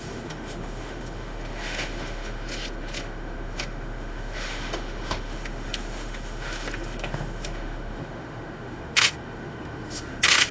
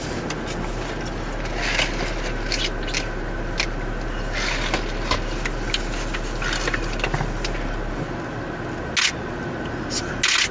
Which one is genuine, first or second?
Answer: second